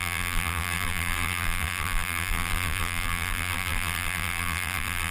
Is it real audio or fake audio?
fake